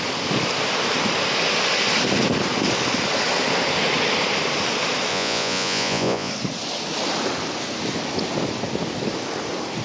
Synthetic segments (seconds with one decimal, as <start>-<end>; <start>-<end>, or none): 5.1-6.3